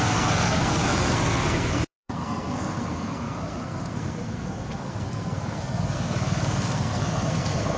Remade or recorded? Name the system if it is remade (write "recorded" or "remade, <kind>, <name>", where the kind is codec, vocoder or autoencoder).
remade, codec, SNAC